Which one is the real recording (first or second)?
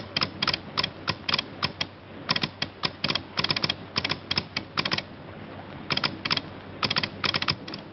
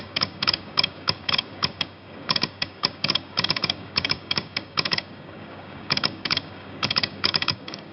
first